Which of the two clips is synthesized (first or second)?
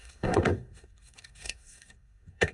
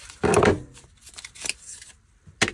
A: first